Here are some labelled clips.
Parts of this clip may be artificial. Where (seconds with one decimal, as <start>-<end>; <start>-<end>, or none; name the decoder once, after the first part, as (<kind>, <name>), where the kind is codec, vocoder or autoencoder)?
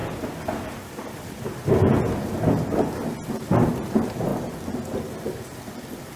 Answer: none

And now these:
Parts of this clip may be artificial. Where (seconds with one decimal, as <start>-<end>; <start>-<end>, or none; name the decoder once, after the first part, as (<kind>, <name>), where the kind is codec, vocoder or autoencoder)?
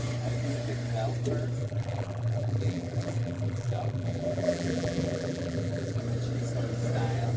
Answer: 1.6-6.0 (vocoder, BigVGAN v2)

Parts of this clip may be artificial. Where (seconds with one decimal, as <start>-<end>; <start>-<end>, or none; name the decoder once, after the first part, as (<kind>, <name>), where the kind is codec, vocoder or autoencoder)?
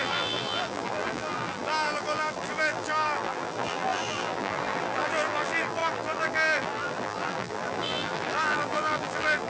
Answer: 0.0-9.5 (vocoder, BigVGAN v2)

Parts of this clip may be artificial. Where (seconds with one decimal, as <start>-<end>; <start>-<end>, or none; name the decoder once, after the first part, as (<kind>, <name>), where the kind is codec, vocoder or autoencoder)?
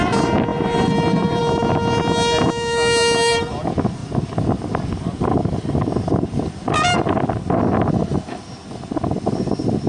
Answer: 0.5-1.4 (vocoder, BigVGAN v2); 4.0-7.0